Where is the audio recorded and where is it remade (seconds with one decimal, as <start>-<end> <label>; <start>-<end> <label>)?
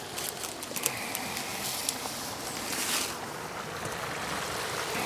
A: 0.0-5.1 recorded